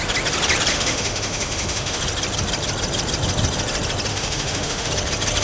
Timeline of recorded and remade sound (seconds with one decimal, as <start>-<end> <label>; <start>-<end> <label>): 0.0-0.7 recorded; 0.7-2.0 remade; 2.0-4.1 recorded; 4.1-4.9 remade; 4.9-5.4 recorded